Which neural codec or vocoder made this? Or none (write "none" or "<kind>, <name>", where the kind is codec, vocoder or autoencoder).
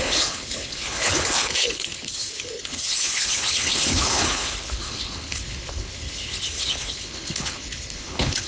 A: codec, HILCodec